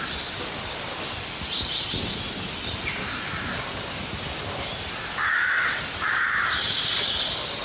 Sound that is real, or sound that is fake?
real